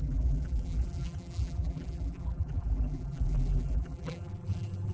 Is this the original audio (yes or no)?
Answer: no